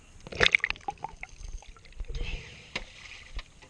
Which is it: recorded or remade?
recorded